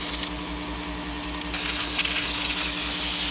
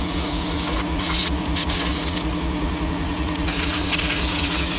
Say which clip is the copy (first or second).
second